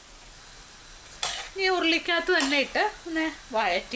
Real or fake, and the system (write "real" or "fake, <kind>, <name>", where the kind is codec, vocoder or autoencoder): real